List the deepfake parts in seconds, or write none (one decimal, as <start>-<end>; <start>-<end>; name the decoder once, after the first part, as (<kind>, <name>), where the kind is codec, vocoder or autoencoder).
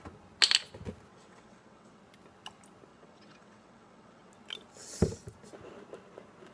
1.1-2.0 (vocoder, WaveNeXt); 2.9-4.3